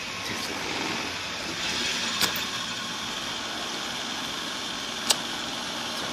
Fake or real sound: real